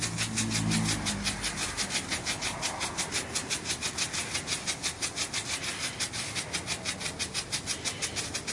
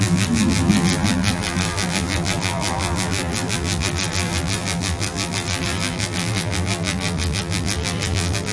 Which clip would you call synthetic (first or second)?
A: second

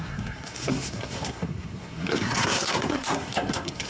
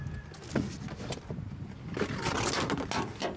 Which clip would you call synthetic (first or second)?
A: first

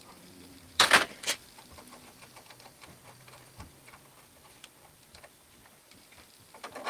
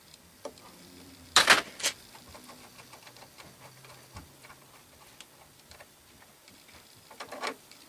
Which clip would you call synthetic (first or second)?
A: first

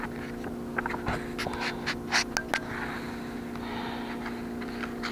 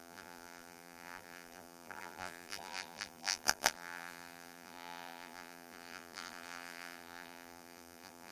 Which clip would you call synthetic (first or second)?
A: second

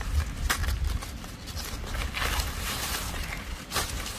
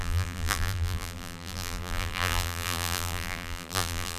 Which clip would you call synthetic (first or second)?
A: second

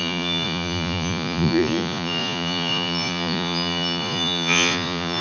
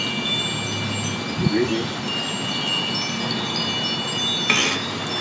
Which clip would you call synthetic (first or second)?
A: first